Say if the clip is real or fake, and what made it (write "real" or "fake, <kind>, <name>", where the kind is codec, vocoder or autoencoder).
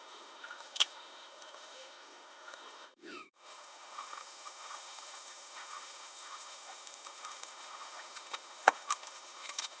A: fake, autoencoder, DAC-VAE